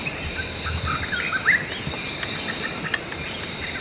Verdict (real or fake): real